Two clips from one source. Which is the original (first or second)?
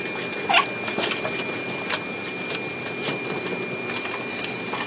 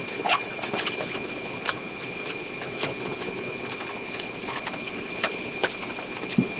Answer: first